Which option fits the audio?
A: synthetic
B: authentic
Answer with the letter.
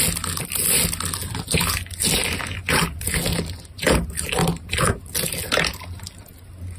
B